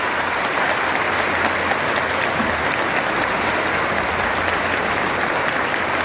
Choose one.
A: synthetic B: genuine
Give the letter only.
B